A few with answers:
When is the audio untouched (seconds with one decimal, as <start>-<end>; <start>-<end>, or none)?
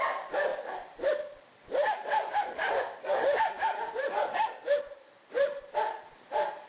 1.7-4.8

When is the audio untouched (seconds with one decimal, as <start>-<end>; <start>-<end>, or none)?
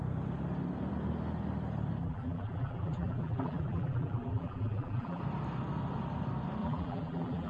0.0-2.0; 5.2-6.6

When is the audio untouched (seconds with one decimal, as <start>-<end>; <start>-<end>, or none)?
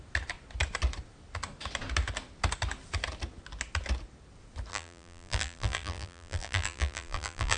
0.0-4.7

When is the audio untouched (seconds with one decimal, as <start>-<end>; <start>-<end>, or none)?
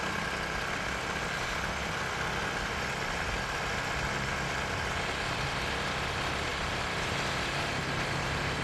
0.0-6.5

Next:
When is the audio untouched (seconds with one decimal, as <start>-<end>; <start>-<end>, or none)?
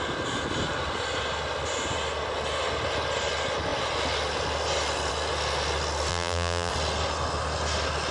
0.0-6.1; 6.7-8.1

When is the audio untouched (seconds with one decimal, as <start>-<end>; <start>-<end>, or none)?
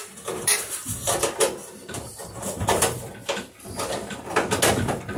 3.1-5.2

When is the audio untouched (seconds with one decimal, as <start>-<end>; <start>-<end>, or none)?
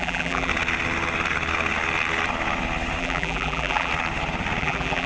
0.5-3.0; 3.9-4.6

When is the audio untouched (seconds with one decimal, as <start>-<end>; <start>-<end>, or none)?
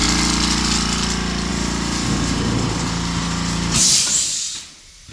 0.0-1.5; 4.4-5.1